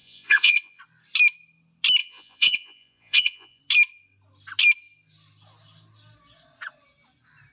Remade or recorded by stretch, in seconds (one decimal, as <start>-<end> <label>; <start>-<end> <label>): 0.0-0.8 remade; 0.8-2.0 recorded; 2.0-3.6 remade; 3.6-7.5 recorded